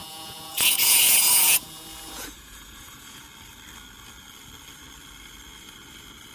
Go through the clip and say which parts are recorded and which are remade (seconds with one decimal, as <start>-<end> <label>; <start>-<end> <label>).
0.0-3.2 remade; 3.2-6.3 recorded